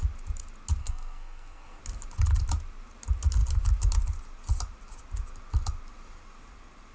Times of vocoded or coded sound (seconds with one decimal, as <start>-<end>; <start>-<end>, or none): 0.8-1.8

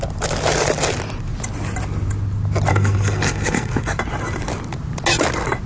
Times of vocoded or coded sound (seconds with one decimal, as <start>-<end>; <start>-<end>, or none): 2.7-4.0